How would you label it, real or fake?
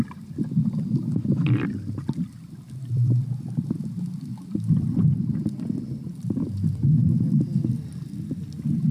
fake